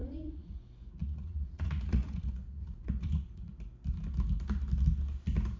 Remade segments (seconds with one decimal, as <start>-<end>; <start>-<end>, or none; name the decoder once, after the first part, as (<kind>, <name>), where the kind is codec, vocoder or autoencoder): 0.0-0.6 (vocoder, Vocos); 1.0-3.5